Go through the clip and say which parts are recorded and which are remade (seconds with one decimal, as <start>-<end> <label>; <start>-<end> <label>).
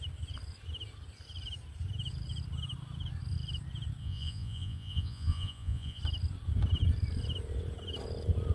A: 0.0-4.0 recorded; 4.0-6.0 remade; 6.0-8.5 recorded